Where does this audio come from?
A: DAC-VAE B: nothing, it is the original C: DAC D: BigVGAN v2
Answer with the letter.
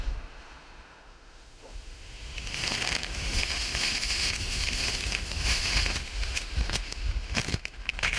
A